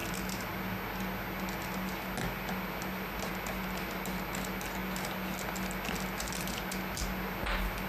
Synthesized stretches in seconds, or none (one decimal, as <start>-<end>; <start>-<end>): none

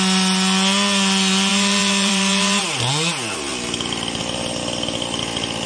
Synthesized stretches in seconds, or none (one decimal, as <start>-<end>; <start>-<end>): 1.5-2.6

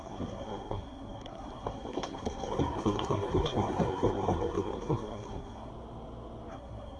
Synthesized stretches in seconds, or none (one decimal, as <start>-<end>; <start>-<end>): 0.0-5.7; 6.5-7.0

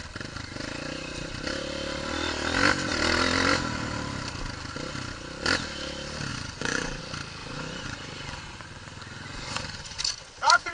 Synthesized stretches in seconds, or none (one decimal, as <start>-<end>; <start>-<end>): 6.3-7.0; 7.4-10.7

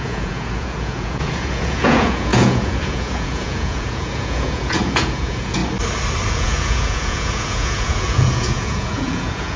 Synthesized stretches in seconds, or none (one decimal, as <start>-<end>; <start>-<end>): 0.0-5.6; 6.3-9.6

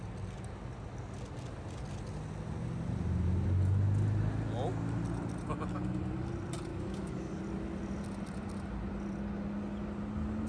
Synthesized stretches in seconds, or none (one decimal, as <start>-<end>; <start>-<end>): 6.7-7.4

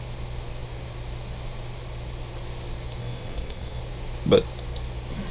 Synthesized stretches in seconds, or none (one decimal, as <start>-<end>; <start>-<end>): 3.0-3.8

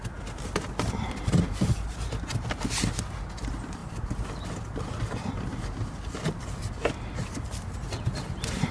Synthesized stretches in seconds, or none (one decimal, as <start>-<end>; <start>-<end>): none